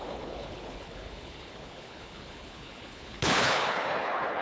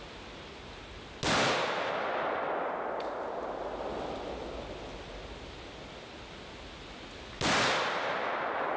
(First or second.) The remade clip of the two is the first